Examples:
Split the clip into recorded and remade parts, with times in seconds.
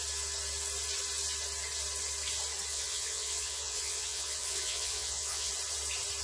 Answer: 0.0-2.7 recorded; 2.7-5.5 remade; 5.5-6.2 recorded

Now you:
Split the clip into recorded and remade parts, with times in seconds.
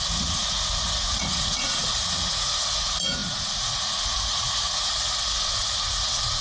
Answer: 0.0-6.4 remade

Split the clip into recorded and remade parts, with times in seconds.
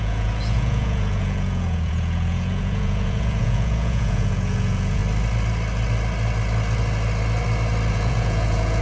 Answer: 0.0-5.0 remade; 5.0-7.9 recorded; 7.9-8.8 remade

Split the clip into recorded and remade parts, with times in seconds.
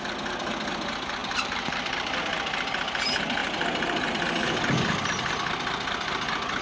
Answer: 0.0-1.2 recorded; 1.2-2.2 remade; 2.2-6.6 recorded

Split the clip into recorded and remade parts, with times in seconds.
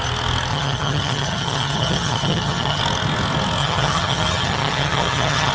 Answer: 0.0-0.5 recorded; 0.5-2.8 remade; 2.8-3.6 recorded; 3.6-5.5 remade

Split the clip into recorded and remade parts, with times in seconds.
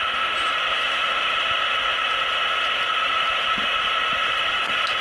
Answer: 0.0-1.9 remade; 1.9-3.8 recorded; 3.8-5.0 remade